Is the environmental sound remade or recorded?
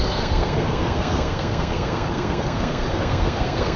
remade